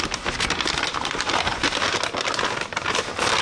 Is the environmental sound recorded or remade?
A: recorded